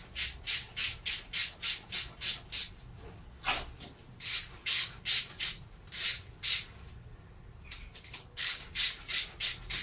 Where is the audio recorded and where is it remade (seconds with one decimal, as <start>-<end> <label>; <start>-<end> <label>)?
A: 0.0-7.9 recorded; 7.9-8.6 remade; 8.6-9.8 recorded

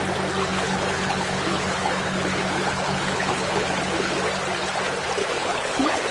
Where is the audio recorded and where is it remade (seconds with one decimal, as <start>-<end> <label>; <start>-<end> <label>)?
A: 0.0-0.5 recorded; 0.5-4.2 remade; 4.2-5.2 recorded; 5.2-6.1 remade

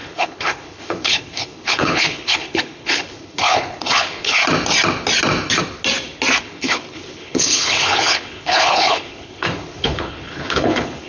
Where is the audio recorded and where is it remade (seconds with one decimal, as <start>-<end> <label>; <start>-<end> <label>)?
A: 0.0-4.4 remade; 4.4-6.4 recorded; 6.4-11.1 remade

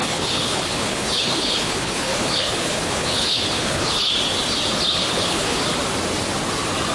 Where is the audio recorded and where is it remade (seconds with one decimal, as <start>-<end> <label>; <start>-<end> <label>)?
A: 0.0-4.1 remade; 4.1-4.9 recorded; 4.9-5.6 remade; 5.6-6.9 recorded

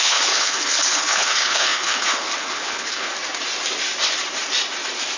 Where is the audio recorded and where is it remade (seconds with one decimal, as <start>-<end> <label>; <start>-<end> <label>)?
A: 0.0-3.1 remade; 3.1-5.2 recorded

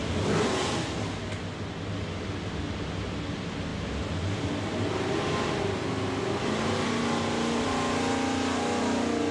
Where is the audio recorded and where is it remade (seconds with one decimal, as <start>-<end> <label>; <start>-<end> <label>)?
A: 0.0-9.3 recorded

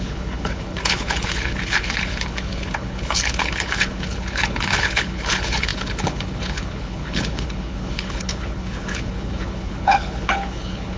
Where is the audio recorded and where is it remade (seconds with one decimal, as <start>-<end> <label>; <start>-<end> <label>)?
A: 0.0-11.0 remade